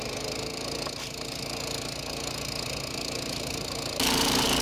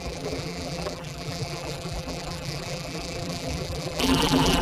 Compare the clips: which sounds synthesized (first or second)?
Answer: second